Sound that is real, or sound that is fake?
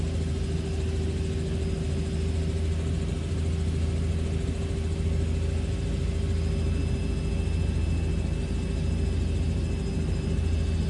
real